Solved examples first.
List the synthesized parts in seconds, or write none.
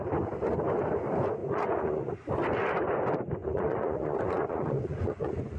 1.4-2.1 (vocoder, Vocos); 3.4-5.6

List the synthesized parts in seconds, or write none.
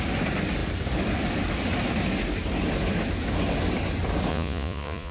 4.3-5.1 (vocoder, Vocos)